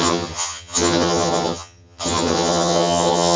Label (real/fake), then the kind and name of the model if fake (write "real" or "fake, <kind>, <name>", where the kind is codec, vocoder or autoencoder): fake, vocoder, HiFi-GAN